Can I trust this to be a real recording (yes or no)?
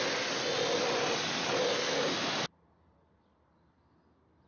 yes